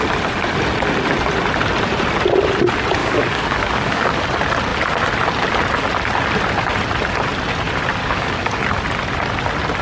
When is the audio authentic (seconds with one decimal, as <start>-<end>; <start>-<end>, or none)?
0.0-3.0; 4.2-8.0; 8.6-9.8